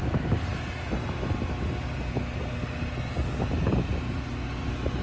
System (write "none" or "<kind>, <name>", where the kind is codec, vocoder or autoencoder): none